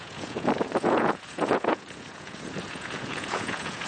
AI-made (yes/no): yes